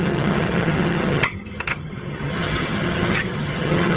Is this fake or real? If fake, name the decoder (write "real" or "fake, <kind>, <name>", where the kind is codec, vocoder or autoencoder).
fake, vocoder, HiFi-GAN